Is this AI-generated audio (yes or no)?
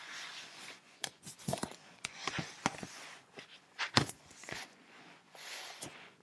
yes